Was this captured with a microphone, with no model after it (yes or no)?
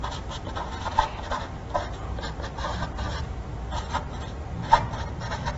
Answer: yes